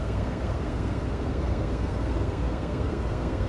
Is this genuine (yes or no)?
no